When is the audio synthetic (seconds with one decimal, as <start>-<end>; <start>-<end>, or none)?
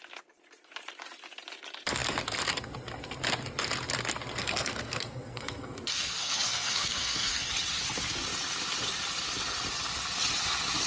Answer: 4.4-7.5